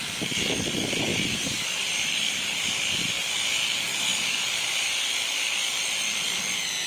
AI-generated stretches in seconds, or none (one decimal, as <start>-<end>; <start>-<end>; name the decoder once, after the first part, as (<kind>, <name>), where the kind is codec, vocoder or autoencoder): 1.1-3.2 (vocoder, BigVGAN v2); 4.1-4.7